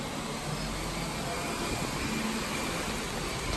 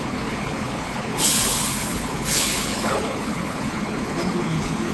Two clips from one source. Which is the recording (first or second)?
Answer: first